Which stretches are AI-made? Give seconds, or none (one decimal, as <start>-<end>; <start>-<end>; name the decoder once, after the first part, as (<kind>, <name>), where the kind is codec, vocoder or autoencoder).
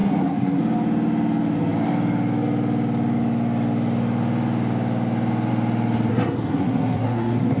0.0-0.6 (codec, SNAC); 6.1-7.6